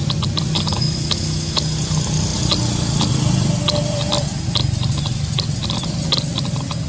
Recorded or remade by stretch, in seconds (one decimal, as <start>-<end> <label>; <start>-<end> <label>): 0.0-0.7 recorded; 0.7-1.6 remade; 1.6-6.9 recorded